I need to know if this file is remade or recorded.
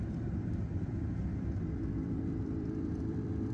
remade